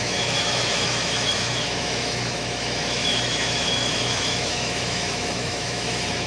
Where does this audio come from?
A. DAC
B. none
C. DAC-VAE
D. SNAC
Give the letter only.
C